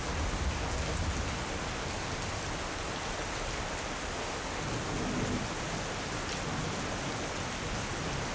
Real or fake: real